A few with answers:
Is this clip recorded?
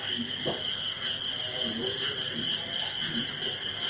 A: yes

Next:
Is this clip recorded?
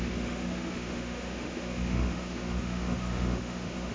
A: no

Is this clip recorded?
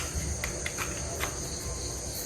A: yes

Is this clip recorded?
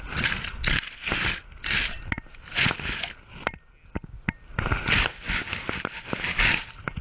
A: yes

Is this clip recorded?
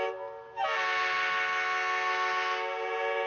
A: yes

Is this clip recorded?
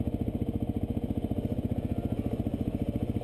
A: yes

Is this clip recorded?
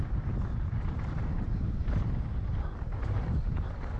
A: yes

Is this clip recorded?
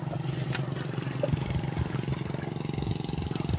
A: yes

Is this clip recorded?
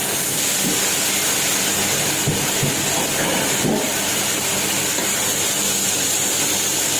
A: yes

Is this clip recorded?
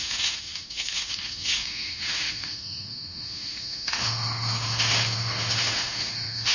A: no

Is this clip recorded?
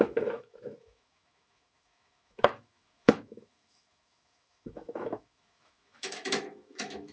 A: no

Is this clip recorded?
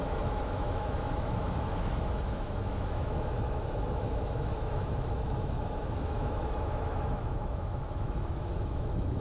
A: no